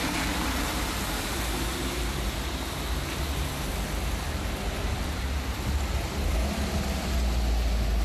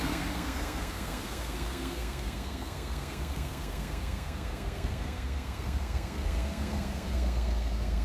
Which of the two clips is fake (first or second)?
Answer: second